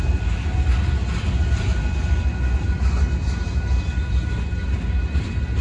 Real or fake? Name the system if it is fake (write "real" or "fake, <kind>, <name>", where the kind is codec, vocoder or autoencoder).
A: real